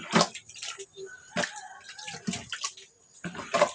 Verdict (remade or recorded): recorded